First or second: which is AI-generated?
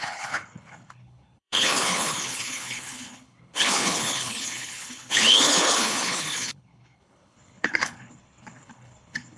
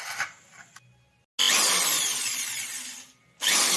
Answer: first